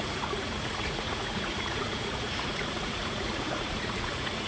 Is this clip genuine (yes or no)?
no